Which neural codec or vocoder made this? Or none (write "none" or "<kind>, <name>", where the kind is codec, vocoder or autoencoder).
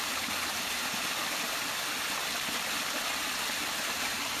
none